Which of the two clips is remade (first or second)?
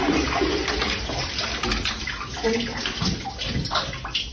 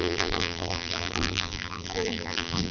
second